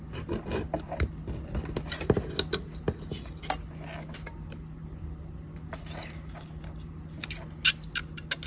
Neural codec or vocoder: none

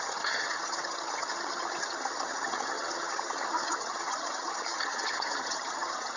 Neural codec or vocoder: vocoder, HiFi-GAN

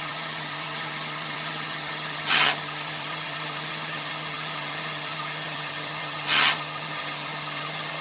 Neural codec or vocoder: vocoder, HiFi-GAN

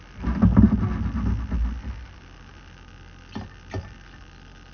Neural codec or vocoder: none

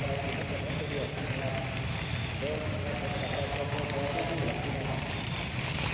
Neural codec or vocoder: none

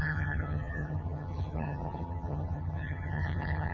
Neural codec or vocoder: vocoder, HiFi-GAN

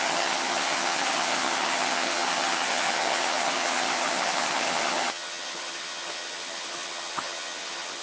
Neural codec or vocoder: vocoder, HiFi-GAN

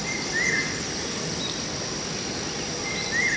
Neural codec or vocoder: none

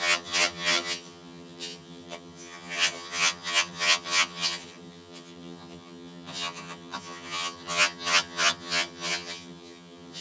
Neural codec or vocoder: vocoder, HiFi-GAN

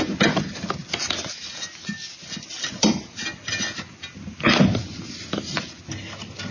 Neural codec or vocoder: none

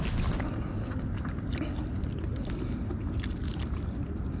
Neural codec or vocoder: none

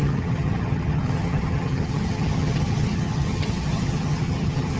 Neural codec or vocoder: vocoder, HiFi-GAN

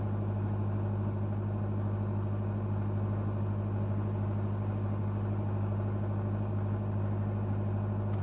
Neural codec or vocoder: none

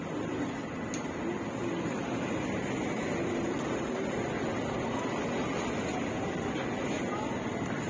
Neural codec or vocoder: none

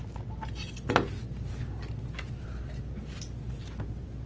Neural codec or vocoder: none